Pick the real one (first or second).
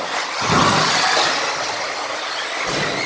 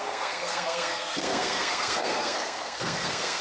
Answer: first